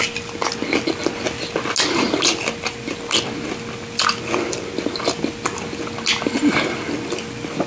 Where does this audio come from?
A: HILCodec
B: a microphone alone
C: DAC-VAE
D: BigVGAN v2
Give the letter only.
B